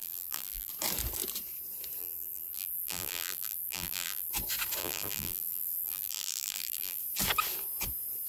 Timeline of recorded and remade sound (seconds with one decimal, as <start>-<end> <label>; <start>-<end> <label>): 0.0-0.7 remade; 0.7-2.0 recorded; 2.0-4.3 remade; 4.3-4.8 recorded; 4.8-7.0 remade; 7.0-8.3 recorded